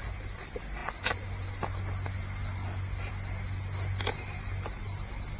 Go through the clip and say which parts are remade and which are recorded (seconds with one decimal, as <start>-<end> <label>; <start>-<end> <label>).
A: 0.0-5.4 recorded